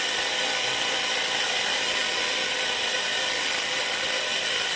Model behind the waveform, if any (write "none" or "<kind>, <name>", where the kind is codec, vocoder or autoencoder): none